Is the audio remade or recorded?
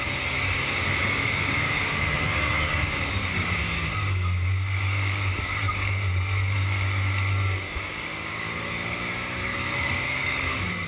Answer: remade